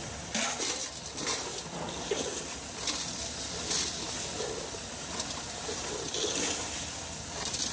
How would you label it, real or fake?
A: real